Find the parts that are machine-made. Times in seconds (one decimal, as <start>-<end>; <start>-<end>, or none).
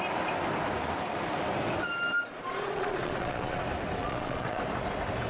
2.3-3.6; 4.0-4.6